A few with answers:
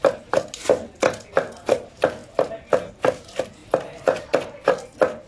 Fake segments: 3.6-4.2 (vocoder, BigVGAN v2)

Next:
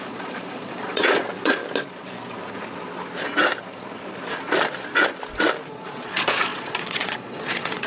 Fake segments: 0.0-1.6 (vocoder, Vocos); 5.7-7.9

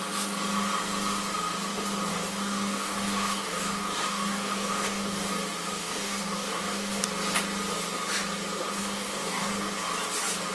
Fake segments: 2.1-5.3 (codec, DAC); 5.7-7.0; 8.8-9.5

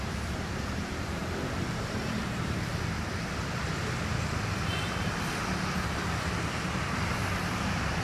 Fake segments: 0.0-2.7 (vocoder, BigVGAN v2); 7.3-8.0

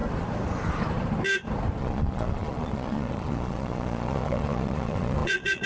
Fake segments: 1.8-5.7 (vocoder, Vocos)

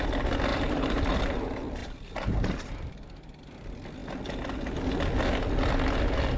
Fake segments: 0.5-1.2 (vocoder, BigVGAN v2); 1.8-2.9